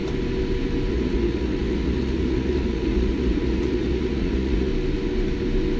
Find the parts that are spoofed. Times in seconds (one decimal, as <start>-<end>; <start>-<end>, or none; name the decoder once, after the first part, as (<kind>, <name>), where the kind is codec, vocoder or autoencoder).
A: 0.9-4.7 (vocoder, Vocos)